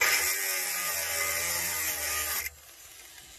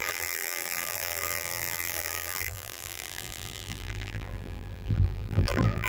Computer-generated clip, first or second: second